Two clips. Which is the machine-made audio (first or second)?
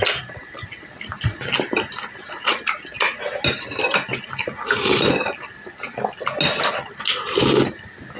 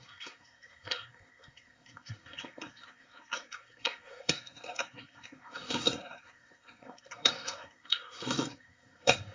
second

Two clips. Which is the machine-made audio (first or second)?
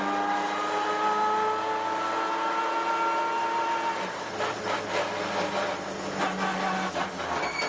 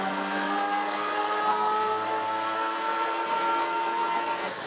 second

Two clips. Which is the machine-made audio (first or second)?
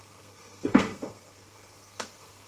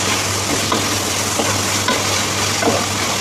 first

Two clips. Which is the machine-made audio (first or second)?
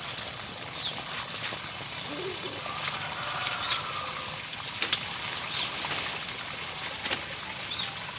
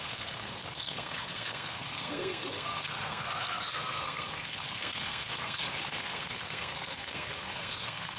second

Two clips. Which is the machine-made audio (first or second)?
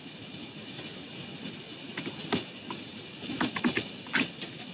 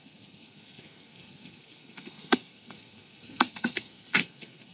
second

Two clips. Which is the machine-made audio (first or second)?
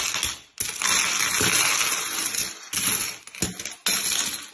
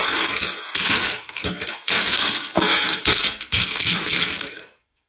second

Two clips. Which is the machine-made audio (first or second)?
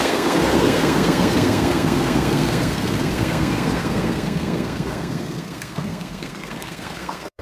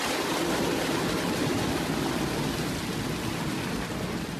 first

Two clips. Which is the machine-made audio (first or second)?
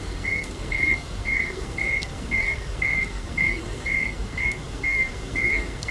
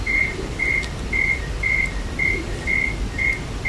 first